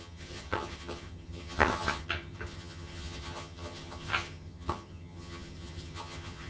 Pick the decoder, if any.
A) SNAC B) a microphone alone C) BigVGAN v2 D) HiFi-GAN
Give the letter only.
D